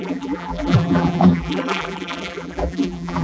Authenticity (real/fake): fake